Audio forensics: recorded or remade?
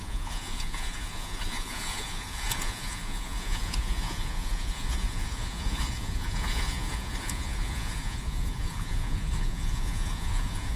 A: remade